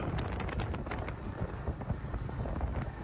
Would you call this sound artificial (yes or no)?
no